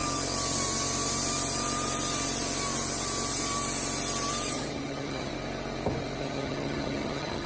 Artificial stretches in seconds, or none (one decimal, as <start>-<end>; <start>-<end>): 4.5-5.3; 6.2-7.5